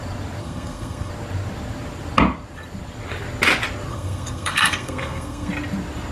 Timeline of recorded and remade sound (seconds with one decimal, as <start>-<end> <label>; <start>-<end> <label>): 0.0-0.4 recorded; 0.4-1.1 remade; 1.1-3.9 recorded; 3.9-5.5 remade; 5.5-6.1 recorded